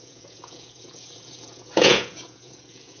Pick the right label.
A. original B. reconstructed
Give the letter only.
B